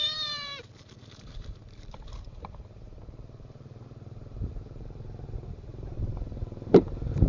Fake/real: fake